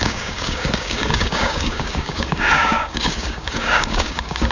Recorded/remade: remade